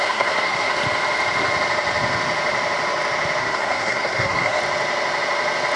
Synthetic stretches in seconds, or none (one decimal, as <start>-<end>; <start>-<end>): 0.0-0.7; 3.4-4.6

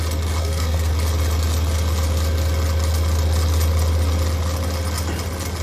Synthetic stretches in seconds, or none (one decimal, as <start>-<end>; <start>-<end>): 0.4-0.9

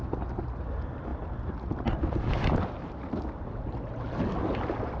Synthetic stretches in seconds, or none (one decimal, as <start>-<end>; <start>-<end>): none

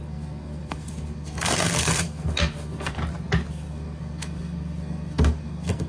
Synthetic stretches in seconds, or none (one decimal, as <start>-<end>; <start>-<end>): 0.0-3.0; 3.5-5.9

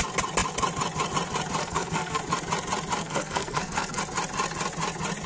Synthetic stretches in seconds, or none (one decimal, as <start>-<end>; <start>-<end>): 1.6-2.2; 3.0-4.0

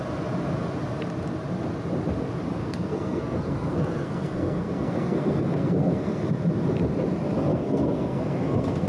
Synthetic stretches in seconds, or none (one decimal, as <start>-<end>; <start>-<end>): 2.6-6.3; 7.5-8.9

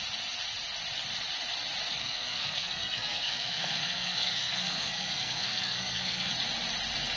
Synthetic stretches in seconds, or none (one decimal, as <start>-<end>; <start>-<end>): 2.0-6.3